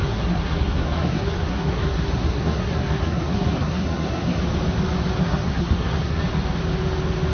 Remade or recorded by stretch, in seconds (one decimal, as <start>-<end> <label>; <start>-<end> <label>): 0.0-4.4 remade; 4.4-5.2 recorded; 5.2-6.2 remade; 6.2-7.3 recorded